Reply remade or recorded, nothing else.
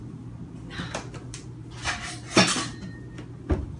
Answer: recorded